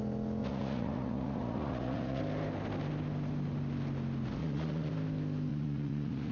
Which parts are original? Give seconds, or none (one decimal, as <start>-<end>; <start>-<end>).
0.0-0.4; 2.2-4.4; 4.9-5.5